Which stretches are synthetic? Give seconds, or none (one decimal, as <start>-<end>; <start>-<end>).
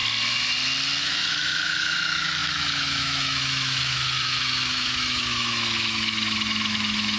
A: 1.0-7.2